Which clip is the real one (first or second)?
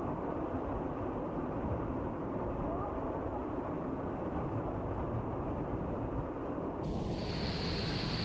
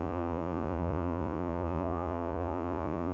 first